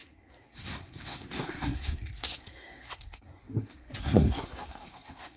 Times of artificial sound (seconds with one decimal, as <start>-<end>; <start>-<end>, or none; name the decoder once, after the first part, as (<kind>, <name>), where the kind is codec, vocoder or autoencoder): 0.0-5.4 (codec, SNAC)